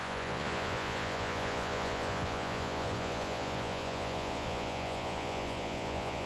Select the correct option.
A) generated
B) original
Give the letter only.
A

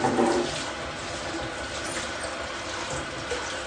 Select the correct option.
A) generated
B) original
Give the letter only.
B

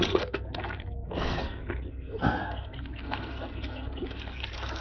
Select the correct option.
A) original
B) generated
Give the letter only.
B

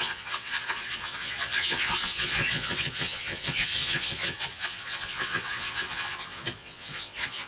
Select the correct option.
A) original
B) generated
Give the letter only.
B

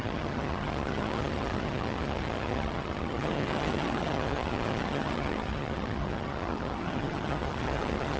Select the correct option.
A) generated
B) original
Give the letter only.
A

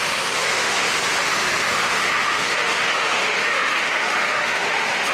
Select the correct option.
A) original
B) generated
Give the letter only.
B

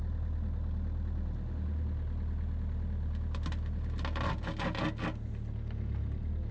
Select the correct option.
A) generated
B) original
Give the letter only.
B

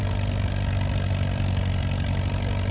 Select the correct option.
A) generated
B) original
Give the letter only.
B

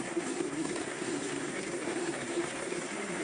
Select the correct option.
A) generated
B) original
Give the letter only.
A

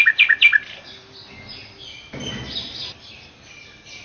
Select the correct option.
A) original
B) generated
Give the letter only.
A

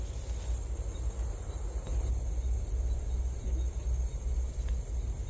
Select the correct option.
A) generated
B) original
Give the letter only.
B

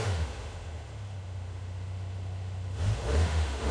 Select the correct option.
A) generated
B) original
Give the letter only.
A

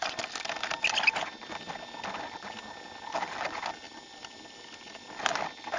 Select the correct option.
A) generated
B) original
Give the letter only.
B